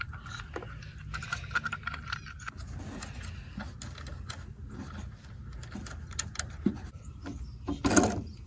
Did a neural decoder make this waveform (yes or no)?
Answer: no